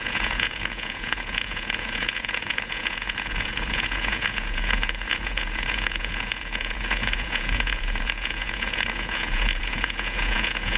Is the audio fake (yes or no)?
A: yes